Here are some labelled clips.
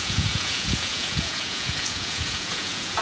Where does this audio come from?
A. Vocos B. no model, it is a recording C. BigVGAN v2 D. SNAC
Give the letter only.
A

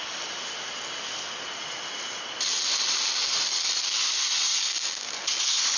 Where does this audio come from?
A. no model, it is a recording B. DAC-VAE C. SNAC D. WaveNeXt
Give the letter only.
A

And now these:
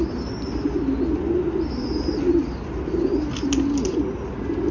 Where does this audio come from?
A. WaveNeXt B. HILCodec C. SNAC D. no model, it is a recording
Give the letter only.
D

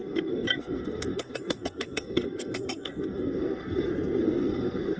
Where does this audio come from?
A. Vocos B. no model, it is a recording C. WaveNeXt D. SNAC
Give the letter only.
D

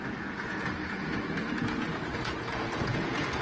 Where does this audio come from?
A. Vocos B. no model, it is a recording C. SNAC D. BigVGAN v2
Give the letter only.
A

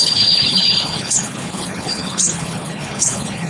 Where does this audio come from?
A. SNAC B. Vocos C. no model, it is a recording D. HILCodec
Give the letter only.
D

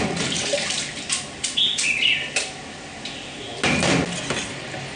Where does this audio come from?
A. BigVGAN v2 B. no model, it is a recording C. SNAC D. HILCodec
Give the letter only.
B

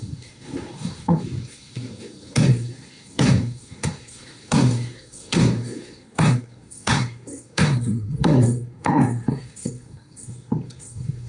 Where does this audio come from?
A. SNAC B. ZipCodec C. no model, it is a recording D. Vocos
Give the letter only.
A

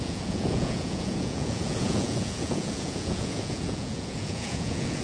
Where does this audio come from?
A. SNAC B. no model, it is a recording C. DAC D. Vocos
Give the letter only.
D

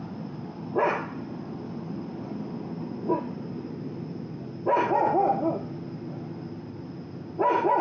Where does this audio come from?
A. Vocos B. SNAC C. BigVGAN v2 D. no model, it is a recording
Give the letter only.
D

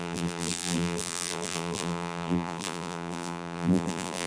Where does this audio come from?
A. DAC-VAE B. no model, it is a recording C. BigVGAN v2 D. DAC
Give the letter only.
C